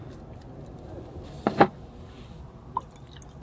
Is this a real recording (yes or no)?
yes